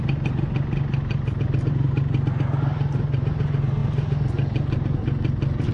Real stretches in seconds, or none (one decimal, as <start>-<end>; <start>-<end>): 0.0-5.7